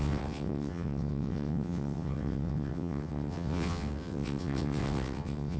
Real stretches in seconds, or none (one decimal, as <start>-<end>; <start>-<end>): none